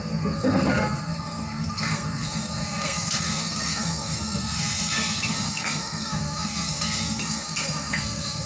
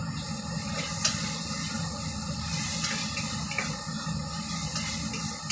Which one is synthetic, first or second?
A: first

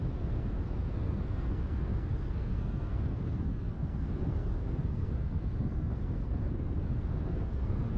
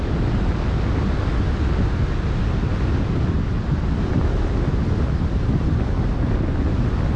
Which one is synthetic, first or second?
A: first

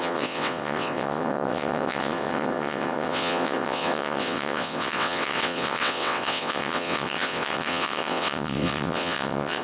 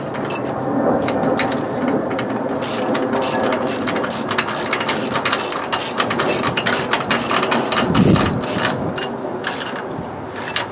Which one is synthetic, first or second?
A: first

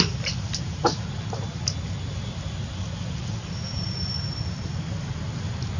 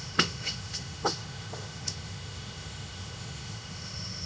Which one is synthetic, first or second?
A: second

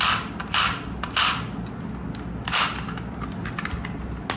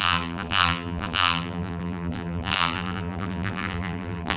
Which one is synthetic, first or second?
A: second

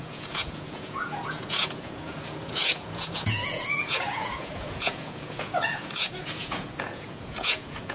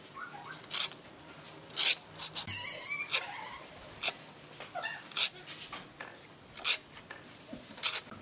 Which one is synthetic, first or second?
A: first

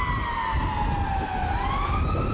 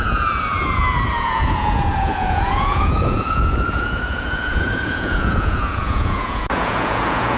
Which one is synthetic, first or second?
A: second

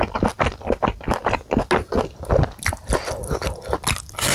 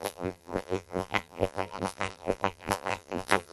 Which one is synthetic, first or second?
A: second